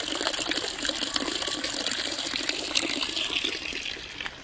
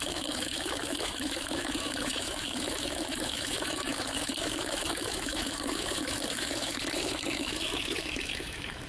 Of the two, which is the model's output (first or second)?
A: second